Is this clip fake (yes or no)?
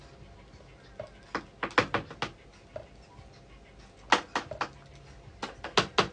no